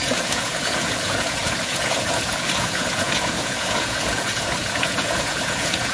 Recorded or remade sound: remade